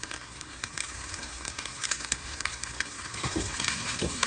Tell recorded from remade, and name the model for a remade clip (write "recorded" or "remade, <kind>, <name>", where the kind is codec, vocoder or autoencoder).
remade, codec, SNAC